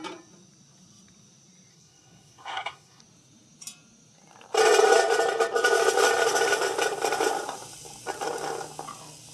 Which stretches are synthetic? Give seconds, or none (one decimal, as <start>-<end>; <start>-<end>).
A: 1.7-3.0